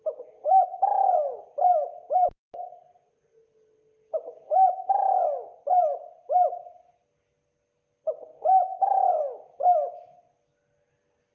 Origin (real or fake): real